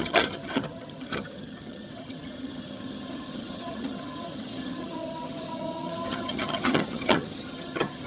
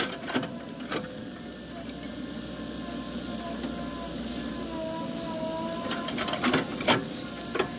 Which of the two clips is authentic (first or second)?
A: second